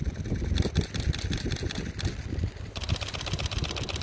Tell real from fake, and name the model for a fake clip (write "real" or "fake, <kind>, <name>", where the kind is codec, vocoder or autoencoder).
real